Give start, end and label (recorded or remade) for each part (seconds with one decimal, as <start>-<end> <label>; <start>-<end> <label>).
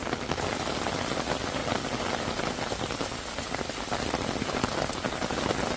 0.0-5.8 recorded